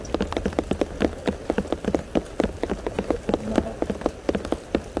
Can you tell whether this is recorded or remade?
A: recorded